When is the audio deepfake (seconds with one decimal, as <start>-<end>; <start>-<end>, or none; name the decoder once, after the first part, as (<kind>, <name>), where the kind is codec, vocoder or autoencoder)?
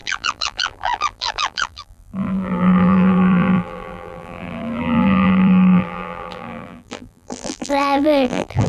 0.0-8.7 (vocoder, BigVGAN v2)